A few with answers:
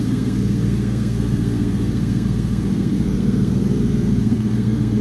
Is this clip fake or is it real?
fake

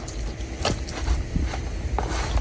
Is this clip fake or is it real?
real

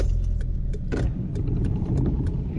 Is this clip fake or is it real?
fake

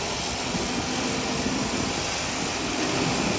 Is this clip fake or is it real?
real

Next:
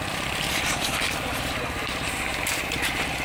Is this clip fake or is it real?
fake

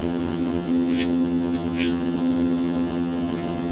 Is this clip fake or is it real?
fake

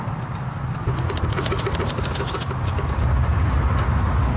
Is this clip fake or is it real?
real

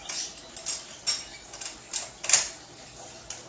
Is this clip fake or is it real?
real